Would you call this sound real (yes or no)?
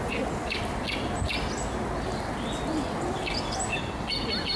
yes